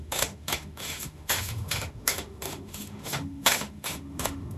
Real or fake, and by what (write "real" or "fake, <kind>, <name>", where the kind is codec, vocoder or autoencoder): fake, autoencoder, DAC-VAE